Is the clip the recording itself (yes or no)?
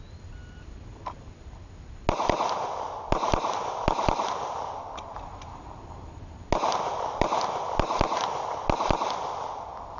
yes